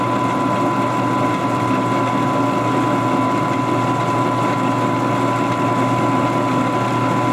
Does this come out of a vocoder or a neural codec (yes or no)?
no